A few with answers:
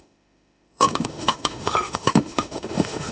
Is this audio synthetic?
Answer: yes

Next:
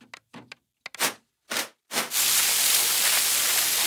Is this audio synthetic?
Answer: no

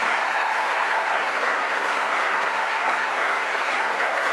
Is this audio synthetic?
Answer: yes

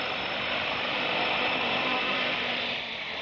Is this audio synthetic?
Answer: yes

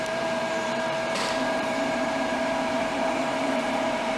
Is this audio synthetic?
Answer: yes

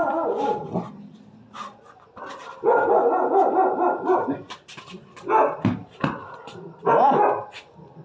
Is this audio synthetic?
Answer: no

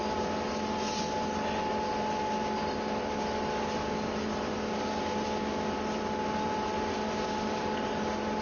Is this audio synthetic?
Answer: no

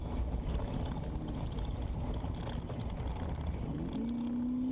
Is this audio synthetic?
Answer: no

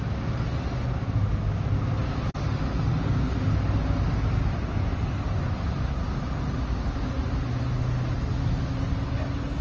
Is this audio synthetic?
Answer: no